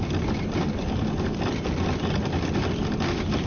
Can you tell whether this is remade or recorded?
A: recorded